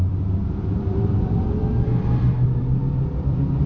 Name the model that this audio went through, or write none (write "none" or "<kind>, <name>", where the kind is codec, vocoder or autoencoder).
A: vocoder, BigVGAN v2